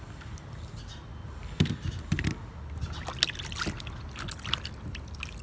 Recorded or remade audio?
recorded